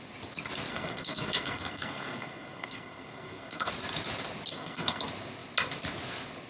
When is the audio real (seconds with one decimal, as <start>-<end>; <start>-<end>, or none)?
0.0-0.7; 3.7-4.5; 5.0-6.5